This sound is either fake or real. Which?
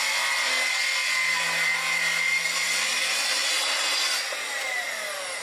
real